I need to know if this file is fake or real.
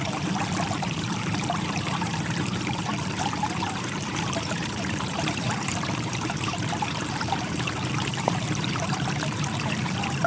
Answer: fake